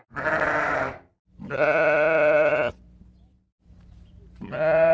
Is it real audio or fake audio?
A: fake